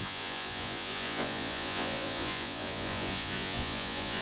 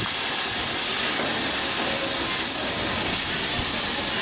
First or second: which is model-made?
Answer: first